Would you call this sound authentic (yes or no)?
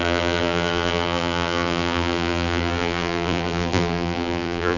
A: no